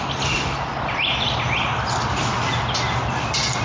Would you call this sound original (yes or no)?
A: yes